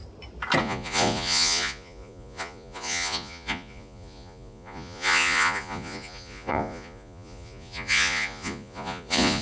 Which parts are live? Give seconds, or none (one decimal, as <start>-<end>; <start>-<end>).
0.0-0.6